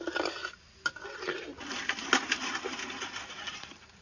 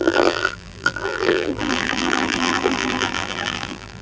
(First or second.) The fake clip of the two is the second